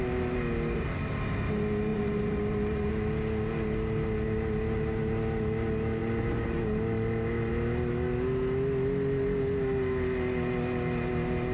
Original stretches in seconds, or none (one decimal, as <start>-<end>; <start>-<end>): 0.0-1.9; 2.9-11.5